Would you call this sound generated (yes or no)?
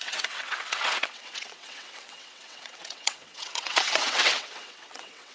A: yes